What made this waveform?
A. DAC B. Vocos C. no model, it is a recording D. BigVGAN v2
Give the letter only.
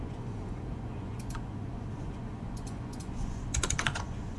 B